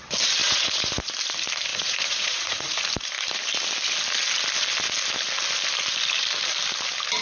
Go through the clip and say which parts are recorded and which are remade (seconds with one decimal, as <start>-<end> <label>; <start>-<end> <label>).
0.0-0.4 recorded; 0.4-1.1 remade; 1.1-1.7 recorded; 1.7-2.8 remade; 2.8-7.2 recorded